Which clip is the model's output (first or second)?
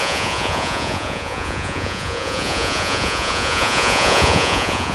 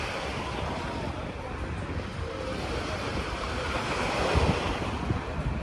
first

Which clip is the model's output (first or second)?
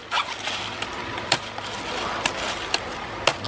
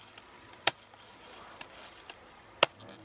second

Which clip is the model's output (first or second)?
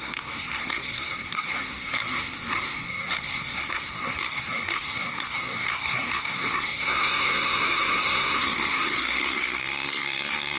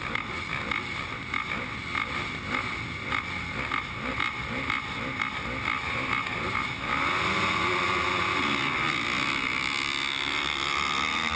first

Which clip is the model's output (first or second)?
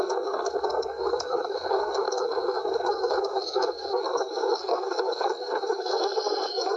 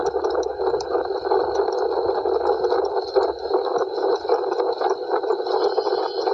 first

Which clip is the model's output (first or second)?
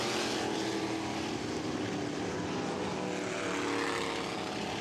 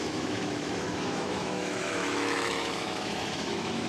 second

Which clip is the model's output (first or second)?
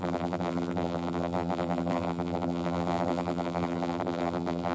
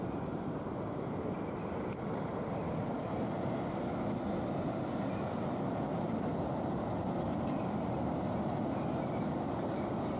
first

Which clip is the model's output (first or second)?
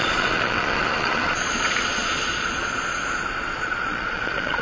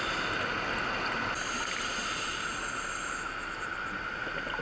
first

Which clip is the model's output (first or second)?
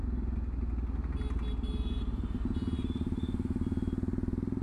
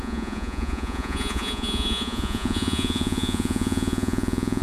second